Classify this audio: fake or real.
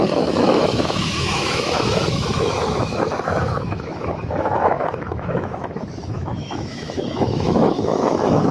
fake